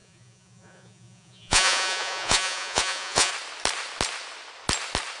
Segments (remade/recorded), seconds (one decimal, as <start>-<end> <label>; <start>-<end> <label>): 0.0-3.3 remade; 3.3-5.2 recorded

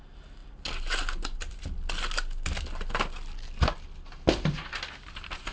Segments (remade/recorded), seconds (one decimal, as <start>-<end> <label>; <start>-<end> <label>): 0.0-5.5 recorded

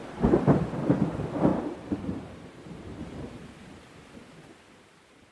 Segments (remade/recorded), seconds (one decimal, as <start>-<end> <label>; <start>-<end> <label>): 0.0-0.7 remade; 0.7-1.5 recorded; 1.5-3.0 remade; 3.0-5.3 recorded